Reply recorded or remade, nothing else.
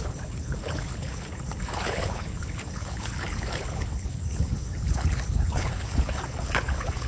remade